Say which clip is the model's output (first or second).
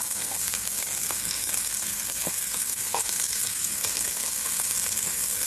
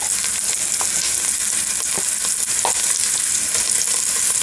first